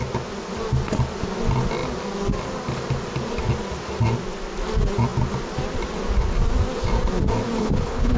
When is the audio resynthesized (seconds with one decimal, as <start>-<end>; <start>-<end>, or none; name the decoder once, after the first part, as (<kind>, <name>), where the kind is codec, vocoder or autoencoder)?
7.6-8.2 (codec, HILCodec)

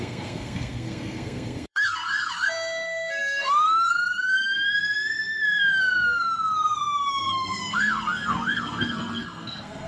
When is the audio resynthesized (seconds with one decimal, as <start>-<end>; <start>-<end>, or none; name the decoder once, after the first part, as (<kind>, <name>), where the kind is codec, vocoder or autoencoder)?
0.0-9.9 (codec, SNAC)

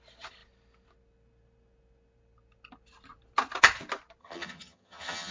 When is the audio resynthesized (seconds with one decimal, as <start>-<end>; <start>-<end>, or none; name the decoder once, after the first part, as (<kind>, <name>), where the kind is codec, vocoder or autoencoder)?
4.2-5.3 (vocoder, HiFi-GAN)